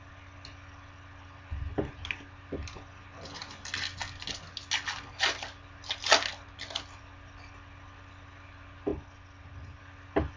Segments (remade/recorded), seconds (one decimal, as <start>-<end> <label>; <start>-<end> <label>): 0.0-10.4 recorded